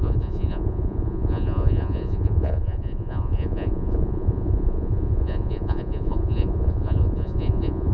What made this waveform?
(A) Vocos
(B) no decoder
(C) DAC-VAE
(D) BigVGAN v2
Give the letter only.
A